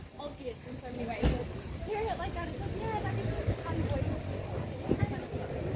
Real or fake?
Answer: real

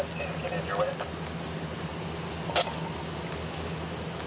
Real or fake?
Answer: real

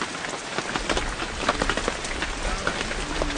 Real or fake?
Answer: real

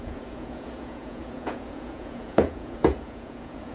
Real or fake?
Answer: fake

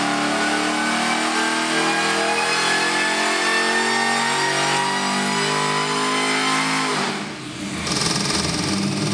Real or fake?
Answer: real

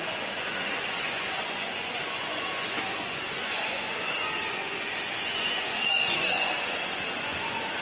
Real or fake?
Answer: fake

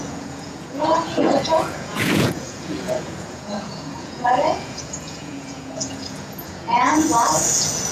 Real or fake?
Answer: fake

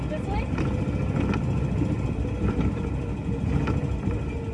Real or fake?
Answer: real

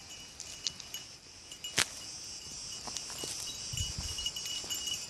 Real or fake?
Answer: real